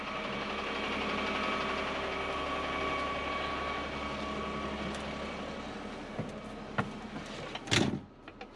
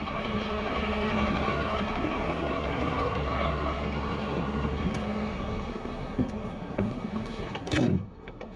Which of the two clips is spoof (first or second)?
second